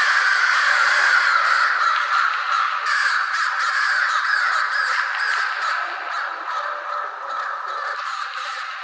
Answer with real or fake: real